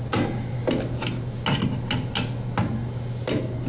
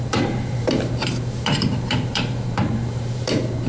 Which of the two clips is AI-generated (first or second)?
second